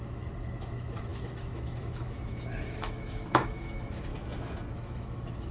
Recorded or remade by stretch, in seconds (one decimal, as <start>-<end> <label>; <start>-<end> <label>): 0.0-4.1 remade; 4.1-4.7 recorded; 4.7-5.5 remade